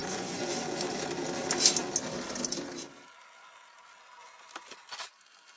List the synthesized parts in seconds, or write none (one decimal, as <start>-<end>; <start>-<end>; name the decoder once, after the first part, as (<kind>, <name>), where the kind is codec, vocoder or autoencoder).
0.0-0.9 (vocoder, Vocos)